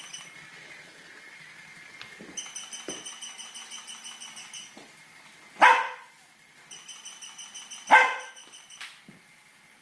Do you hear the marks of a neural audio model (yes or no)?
no